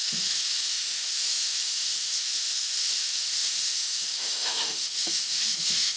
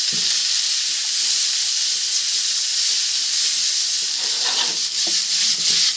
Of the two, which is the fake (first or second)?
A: first